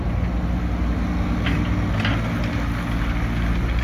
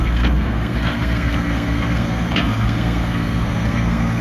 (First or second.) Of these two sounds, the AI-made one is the second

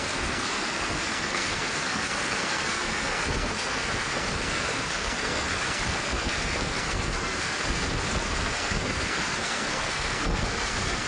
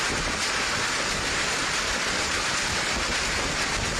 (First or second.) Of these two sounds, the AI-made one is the first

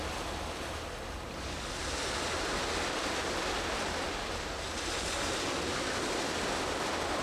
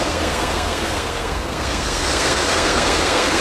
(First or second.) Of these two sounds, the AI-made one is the second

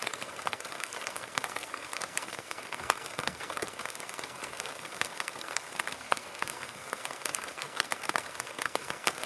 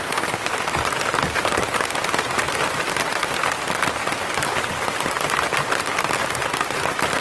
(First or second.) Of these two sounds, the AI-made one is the first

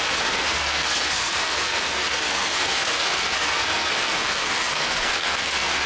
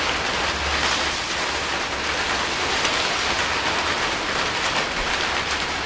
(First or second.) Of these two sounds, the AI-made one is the first